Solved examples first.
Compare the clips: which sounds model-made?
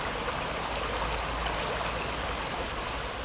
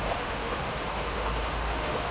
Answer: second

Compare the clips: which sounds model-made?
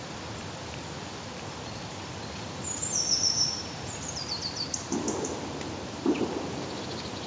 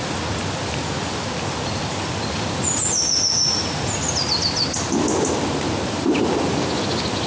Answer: first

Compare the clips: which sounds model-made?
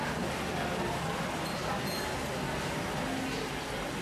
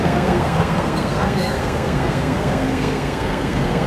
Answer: second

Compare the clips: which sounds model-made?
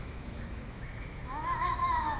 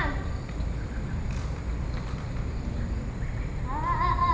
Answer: first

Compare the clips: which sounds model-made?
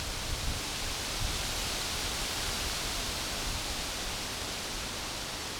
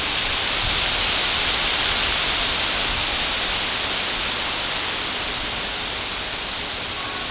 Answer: first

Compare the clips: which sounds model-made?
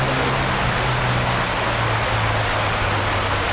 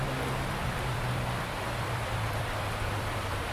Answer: second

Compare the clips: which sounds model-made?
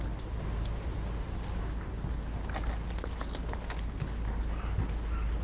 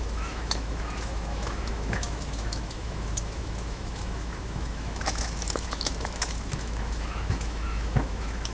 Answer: second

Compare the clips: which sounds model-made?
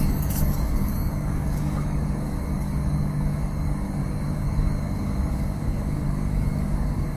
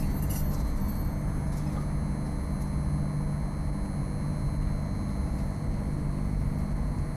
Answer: first